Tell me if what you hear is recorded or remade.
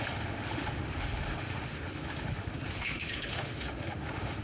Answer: remade